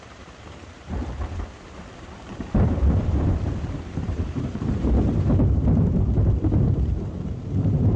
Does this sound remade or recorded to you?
remade